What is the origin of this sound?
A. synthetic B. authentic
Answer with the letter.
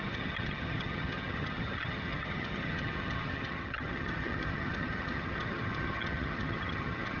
A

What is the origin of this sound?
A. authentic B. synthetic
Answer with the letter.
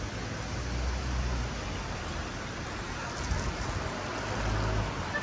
A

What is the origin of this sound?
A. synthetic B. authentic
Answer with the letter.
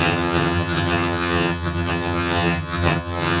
A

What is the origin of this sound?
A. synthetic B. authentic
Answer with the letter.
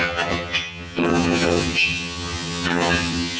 A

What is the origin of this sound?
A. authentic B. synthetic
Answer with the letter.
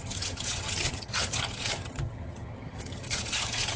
B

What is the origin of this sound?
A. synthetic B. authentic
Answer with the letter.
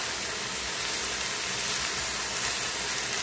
B